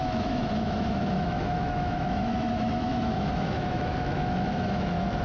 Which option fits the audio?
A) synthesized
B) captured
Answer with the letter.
A